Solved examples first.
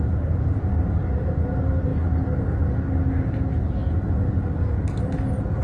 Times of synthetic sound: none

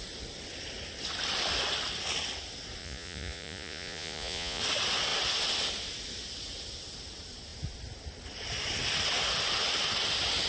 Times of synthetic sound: 2.8-4.6 (vocoder, Vocos)

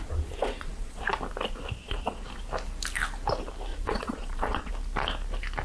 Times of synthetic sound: 0.4-1.0 (vocoder, Vocos); 1.8-2.3; 3.7-4.7